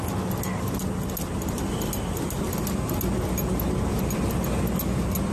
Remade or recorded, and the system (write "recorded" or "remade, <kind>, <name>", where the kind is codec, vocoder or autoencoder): recorded